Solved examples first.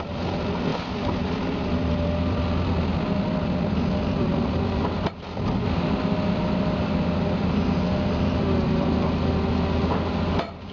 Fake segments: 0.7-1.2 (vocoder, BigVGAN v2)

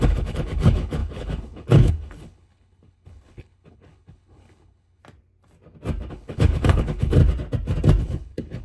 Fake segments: 0.0-5.0 (codec, HILCodec); 6.1-7.2; 8.0-8.6

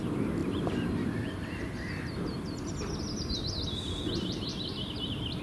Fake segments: 0.4-2.7 (vocoder, BigVGAN v2); 4.5-5.4